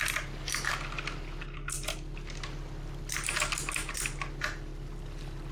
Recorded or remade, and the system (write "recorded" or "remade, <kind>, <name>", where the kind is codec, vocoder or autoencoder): recorded